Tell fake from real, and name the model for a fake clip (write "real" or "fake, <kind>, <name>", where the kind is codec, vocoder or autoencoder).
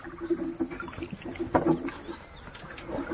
real